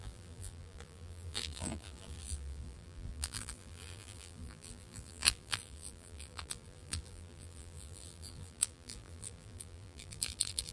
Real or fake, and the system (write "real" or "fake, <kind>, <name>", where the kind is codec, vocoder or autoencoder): fake, vocoder, BigVGAN v2